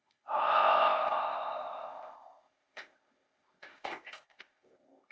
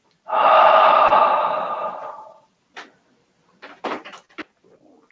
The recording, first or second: second